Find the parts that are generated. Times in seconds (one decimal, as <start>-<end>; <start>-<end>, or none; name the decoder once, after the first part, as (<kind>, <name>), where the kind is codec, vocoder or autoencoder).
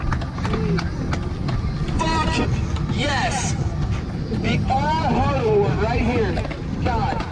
2.1-6.5 (vocoder, BigVGAN v2)